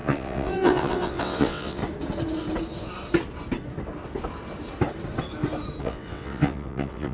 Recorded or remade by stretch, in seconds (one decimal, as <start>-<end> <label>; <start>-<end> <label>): 0.0-1.8 remade; 1.8-5.8 recorded; 5.8-7.1 remade

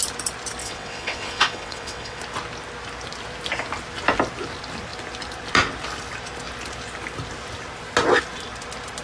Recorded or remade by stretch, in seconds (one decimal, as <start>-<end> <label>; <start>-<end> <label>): 0.0-0.6 recorded; 0.6-2.2 remade; 2.2-9.0 recorded

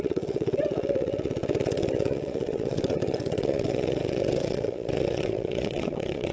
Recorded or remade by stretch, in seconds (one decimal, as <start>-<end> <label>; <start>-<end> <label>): 0.0-6.3 remade

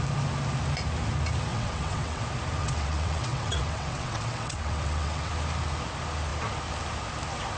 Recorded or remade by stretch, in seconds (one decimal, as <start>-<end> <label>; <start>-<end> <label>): 0.0-1.5 recorded; 1.5-2.2 remade; 2.2-2.6 recorded; 2.6-5.3 remade; 5.3-7.6 recorded